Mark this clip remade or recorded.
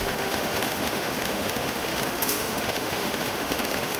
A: remade